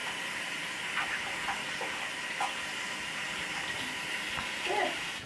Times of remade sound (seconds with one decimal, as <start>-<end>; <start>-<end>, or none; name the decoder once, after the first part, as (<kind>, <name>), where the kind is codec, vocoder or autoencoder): none